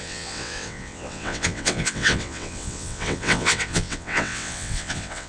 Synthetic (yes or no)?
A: yes